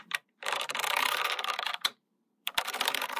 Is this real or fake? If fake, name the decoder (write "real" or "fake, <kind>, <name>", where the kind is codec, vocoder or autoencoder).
fake, vocoder, BigVGAN v2